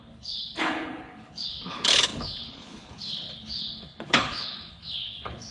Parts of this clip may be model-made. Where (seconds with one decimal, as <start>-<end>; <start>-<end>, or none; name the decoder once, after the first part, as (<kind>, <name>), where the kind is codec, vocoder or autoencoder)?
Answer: 0.0-5.5 (codec, HILCodec)